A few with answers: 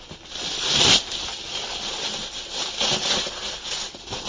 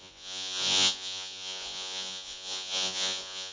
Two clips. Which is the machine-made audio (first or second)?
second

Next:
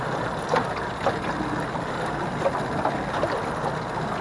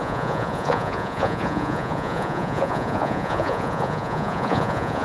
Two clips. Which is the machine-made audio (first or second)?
second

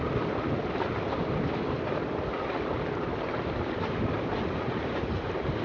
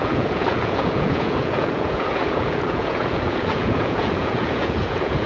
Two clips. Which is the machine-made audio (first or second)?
second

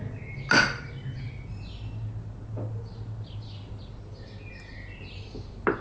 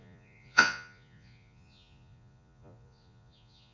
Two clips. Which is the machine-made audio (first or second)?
second